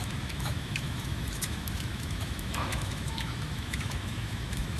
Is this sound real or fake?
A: fake